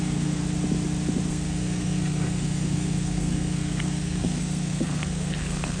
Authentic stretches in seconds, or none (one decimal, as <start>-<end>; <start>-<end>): 0.4-1.3